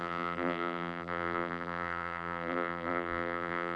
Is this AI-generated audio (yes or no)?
yes